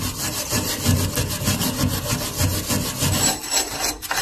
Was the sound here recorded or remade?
recorded